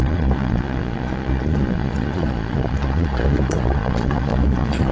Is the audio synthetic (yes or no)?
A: yes